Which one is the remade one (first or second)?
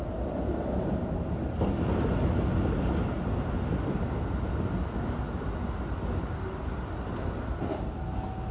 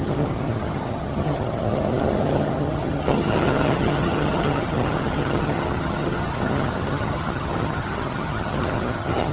second